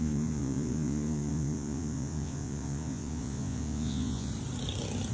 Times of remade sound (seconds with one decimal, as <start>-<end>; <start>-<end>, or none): 0.0-4.3